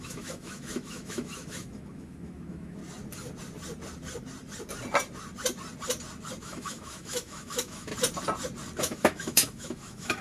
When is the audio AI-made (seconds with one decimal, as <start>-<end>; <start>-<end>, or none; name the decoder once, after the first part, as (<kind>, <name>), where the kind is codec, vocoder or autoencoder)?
0.0-2.8 (autoencoder, DAC-VAE); 6.4-7.9; 8.8-10.2